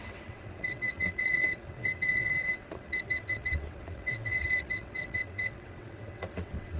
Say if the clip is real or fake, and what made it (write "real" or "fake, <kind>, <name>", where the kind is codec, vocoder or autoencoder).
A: fake, vocoder, WaveNeXt